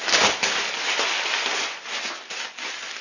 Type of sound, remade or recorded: recorded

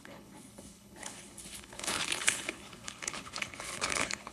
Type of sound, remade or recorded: remade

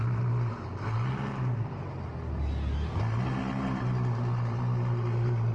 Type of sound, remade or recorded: recorded